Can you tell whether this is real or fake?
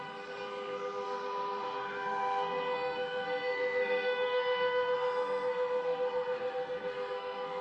fake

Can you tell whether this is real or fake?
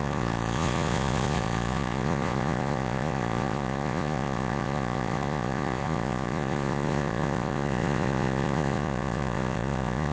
fake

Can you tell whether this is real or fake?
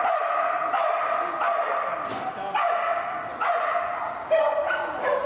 real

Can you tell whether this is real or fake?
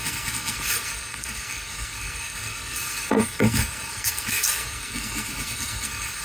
fake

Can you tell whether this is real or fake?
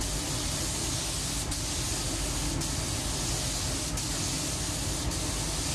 real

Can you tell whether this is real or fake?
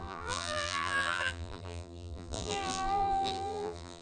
fake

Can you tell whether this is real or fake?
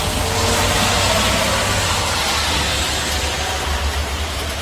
real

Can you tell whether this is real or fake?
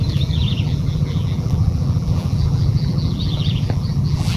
fake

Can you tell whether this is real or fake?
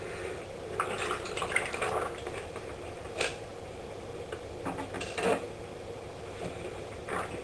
real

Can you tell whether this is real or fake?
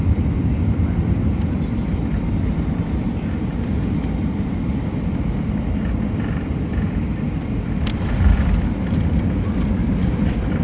fake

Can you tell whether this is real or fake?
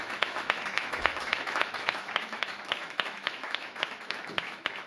fake